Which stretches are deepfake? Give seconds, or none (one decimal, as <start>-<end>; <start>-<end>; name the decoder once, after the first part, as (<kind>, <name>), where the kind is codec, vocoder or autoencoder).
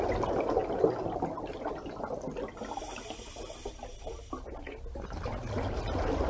none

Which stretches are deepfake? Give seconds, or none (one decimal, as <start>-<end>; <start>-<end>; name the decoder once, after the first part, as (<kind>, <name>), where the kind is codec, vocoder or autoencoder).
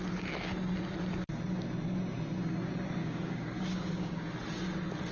3.0-4.1 (codec, DAC)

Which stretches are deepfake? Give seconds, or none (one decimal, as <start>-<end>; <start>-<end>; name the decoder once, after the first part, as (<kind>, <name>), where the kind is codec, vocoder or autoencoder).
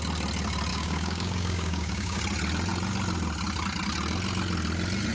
0.7-2.2 (codec, DAC)